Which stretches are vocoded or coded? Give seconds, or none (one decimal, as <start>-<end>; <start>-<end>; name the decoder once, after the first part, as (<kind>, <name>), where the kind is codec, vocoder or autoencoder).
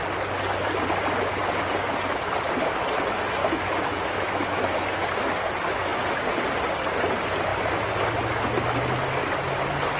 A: 3.4-4.8 (autoencoder, DAC-VAE)